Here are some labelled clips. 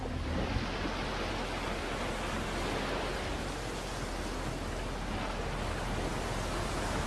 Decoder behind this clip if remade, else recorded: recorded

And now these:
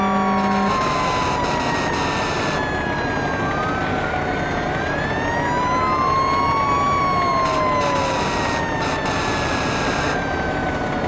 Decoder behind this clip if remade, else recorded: recorded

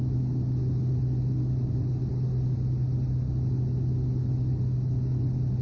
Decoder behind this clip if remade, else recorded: recorded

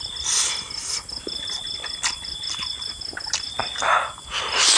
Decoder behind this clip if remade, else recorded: recorded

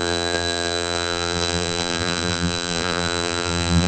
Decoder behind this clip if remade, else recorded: remade, vocoder, BigVGAN v2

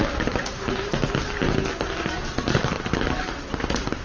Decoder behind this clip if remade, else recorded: recorded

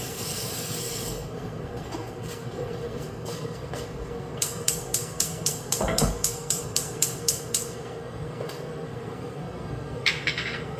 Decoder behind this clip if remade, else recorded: remade, codec, SNAC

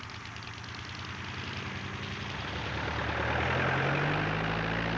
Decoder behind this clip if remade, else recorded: recorded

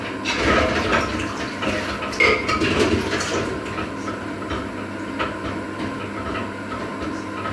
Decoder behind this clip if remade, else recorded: recorded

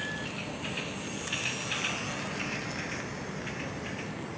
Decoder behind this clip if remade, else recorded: recorded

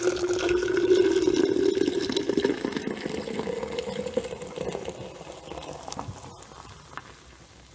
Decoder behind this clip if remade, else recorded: recorded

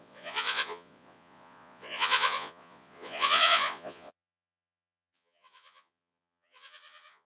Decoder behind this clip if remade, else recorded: remade, vocoder, Vocos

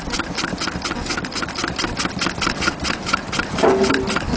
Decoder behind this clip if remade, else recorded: recorded